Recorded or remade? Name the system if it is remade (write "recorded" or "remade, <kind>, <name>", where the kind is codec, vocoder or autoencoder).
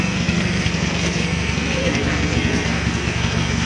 remade, codec, SNAC